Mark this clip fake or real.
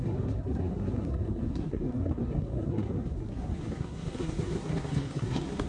fake